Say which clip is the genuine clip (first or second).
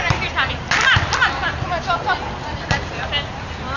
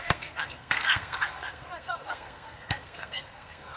first